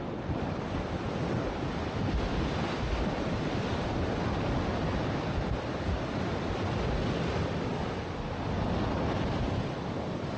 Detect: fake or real real